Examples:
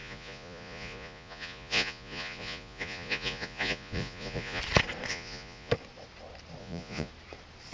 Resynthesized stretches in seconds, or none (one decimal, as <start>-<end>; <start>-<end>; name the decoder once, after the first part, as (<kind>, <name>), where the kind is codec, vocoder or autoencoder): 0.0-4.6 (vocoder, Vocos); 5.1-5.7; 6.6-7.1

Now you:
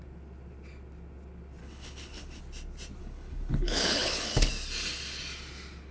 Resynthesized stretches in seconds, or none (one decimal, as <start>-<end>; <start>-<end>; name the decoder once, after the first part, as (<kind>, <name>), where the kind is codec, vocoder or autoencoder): 1.6-2.4 (codec, HILCodec); 3.0-4.5

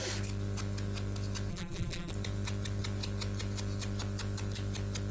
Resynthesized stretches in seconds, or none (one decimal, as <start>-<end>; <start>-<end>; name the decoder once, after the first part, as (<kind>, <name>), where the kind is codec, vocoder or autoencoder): 1.5-2.1 (vocoder, BigVGAN v2)

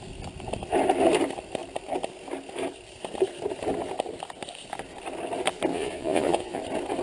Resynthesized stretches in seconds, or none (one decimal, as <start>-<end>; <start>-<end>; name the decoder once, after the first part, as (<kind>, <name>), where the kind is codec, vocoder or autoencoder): 5.7-6.6 (vocoder, Vocos)